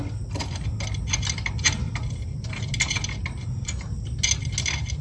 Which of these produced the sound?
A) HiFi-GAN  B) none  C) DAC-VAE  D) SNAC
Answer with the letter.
B